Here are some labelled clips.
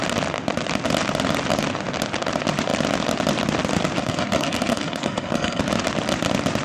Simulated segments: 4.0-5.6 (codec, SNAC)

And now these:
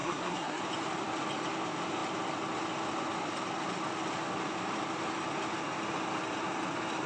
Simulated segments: 0.0-0.6 (codec, SNAC)

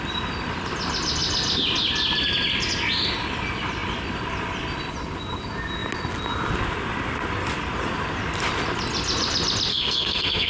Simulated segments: 9.7-10.5 (codec, SNAC)

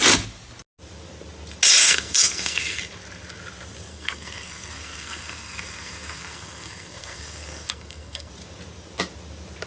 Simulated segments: 1.8-2.8 (codec, SNAC); 3.9-8.3

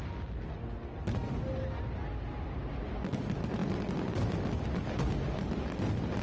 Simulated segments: none

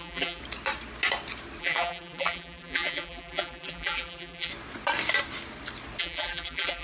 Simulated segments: 0.0-0.4 (vocoder, BigVGAN v2); 1.6-4.5; 6.0-6.8

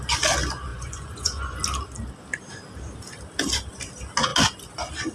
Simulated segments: 0.7-1.6 (vocoder, Vocos)

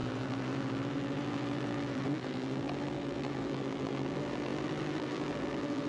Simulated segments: 0.0-5.9 (vocoder, BigVGAN v2)